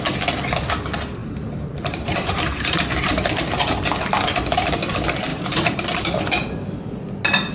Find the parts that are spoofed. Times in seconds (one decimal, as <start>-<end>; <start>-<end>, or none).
1.2-2.8; 5.3-6.2